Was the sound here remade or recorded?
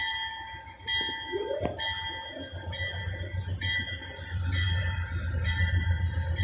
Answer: recorded